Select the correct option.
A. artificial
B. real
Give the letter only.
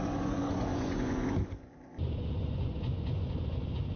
A